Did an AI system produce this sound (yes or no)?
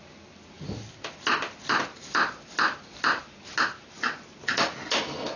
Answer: no